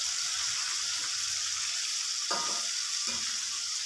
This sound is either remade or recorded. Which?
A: recorded